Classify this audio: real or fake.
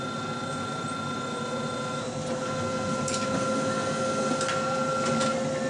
real